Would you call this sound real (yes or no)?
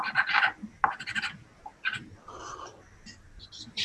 yes